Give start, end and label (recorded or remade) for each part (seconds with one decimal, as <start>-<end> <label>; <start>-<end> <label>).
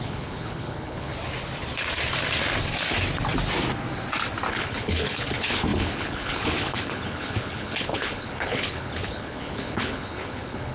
0.0-1.1 remade; 1.1-4.5 recorded; 4.5-10.7 remade